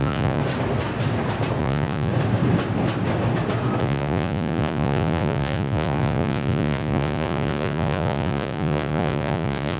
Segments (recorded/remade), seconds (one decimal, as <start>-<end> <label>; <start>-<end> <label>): 0.0-0.4 remade; 0.4-1.6 recorded; 1.6-2.1 remade; 2.1-3.8 recorded; 3.8-9.8 remade